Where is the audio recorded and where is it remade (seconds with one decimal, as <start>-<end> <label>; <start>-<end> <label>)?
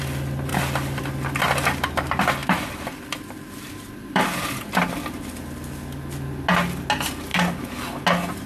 0.0-0.5 recorded; 0.5-1.0 remade; 1.0-2.4 recorded; 2.4-5.2 remade; 5.2-7.3 recorded; 7.3-8.0 remade; 8.0-8.5 recorded